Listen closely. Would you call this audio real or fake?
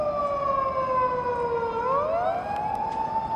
real